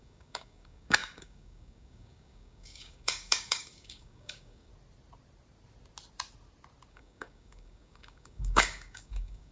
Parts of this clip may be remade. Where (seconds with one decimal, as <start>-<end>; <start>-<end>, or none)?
0.0-4.7; 6.9-9.5